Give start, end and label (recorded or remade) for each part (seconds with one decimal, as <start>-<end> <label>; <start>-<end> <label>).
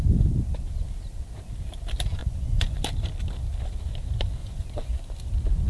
0.0-2.2 recorded; 2.2-2.8 remade; 2.8-4.4 recorded; 4.4-5.0 remade; 5.0-5.7 recorded